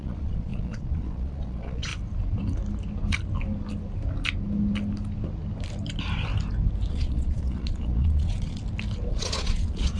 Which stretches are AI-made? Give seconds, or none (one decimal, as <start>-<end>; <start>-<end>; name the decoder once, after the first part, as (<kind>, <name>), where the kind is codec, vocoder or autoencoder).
0.0-1.9 (vocoder, Vocos); 6.9-8.6; 9.1-10.0